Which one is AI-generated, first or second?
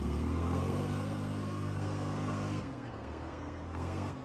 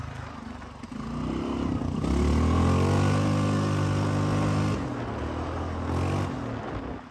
first